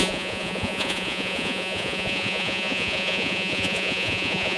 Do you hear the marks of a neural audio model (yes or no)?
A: yes